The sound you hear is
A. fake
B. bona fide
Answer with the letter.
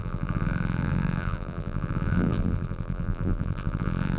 A